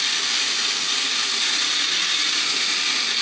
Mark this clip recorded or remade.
recorded